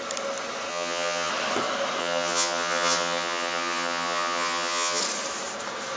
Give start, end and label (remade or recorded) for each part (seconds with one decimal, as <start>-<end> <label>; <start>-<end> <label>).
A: 0.0-0.7 recorded; 0.7-1.3 remade; 1.3-2.0 recorded; 2.0-5.0 remade; 5.0-6.0 recorded